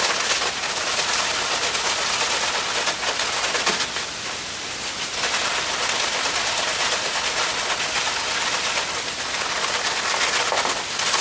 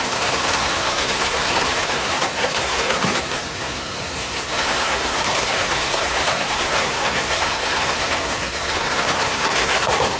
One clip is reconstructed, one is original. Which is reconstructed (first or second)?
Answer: second